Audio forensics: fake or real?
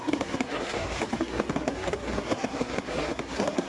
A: fake